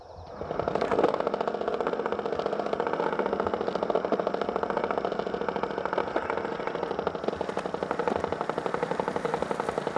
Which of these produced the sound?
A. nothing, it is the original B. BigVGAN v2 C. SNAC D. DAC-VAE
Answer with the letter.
A